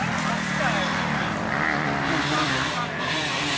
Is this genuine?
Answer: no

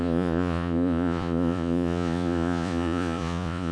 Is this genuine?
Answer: no